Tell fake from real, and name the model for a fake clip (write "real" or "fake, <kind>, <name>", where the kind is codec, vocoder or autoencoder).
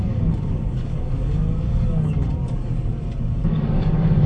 fake, codec, DAC